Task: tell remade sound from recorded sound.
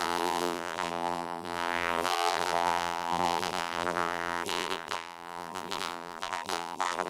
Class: remade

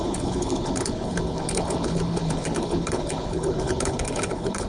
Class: remade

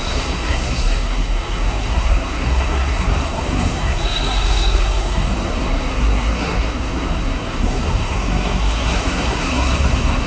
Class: remade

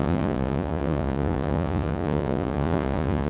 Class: remade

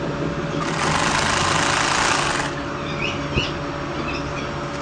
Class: recorded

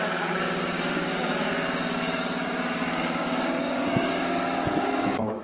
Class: remade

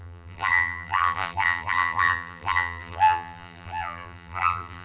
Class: remade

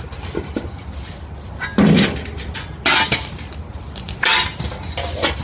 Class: recorded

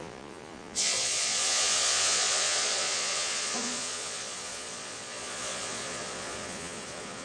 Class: remade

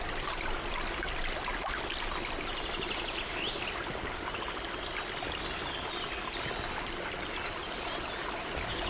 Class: recorded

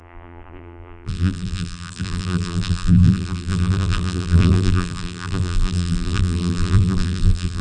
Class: remade